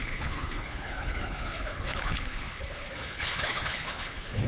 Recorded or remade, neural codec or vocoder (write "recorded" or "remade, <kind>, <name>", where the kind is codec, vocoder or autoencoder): remade, codec, HILCodec